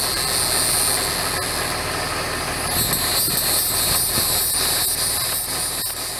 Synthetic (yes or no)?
no